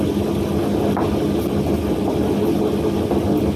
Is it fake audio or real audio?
real